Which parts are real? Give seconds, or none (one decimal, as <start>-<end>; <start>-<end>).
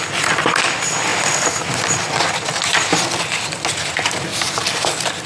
0.0-4.3